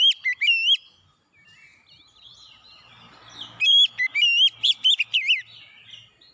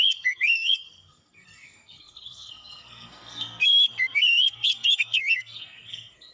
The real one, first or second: first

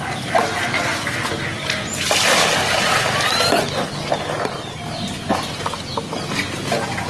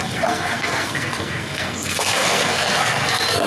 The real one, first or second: first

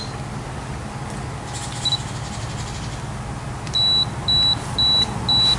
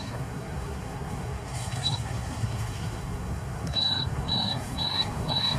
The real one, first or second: first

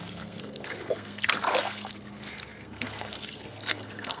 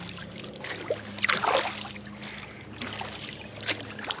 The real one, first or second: second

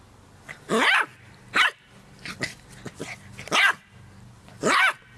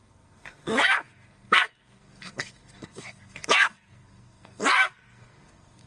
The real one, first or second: first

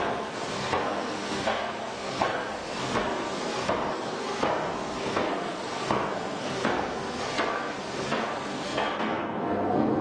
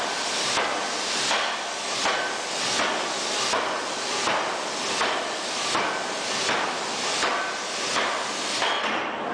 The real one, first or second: second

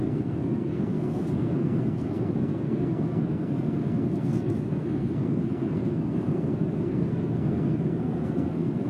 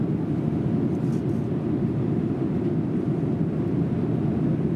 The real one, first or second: second